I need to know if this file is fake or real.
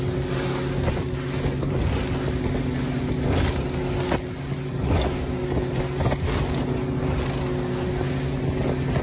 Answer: real